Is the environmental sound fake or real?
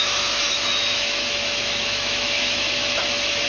fake